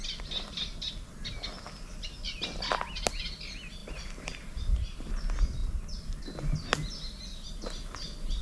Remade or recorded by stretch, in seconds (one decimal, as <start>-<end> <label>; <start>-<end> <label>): 0.0-3.8 recorded; 3.8-5.1 remade; 5.1-8.4 recorded